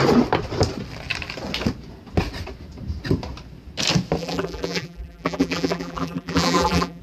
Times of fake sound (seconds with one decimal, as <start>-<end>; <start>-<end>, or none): 4.2-7.0